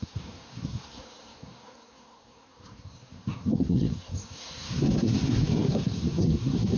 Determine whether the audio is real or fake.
fake